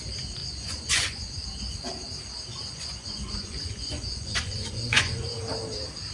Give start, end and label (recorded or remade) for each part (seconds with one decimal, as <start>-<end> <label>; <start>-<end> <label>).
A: 0.0-0.4 recorded; 0.4-1.3 remade; 1.3-2.5 recorded; 2.5-5.3 remade; 5.3-6.1 recorded